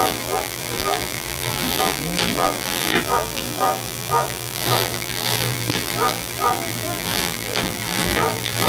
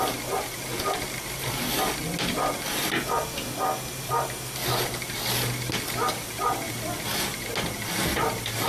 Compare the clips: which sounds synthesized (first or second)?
first